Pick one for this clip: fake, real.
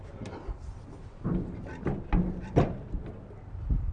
real